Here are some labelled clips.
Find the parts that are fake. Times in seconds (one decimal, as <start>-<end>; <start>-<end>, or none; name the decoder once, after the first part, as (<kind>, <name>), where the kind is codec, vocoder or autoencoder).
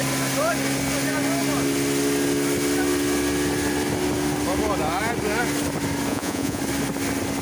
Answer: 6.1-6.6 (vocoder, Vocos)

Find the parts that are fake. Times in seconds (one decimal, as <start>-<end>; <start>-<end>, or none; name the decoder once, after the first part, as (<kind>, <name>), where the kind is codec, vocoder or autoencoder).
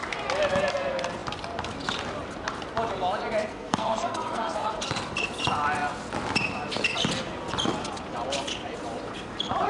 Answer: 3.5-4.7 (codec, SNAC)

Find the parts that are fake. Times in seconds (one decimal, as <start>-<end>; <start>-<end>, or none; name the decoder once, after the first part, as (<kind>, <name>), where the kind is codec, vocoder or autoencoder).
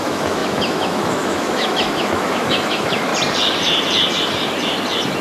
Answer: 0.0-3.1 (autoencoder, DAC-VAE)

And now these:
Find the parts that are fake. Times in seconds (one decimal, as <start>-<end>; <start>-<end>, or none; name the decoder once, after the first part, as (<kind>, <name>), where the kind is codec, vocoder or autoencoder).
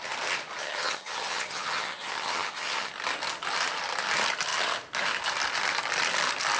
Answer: 0.6-2.9 (vocoder, HiFi-GAN)